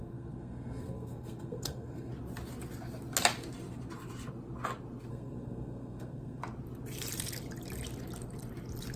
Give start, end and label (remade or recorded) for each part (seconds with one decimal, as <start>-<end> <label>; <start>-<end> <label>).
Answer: 0.0-2.1 remade; 2.1-5.1 recorded; 5.1-6.4 remade; 6.4-9.0 recorded